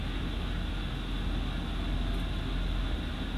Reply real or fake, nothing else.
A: real